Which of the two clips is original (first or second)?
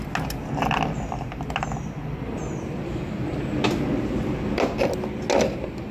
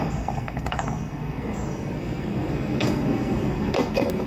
first